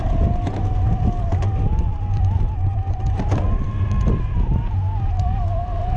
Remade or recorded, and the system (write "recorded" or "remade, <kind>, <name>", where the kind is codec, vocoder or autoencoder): recorded